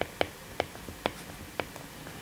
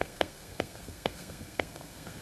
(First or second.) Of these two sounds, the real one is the first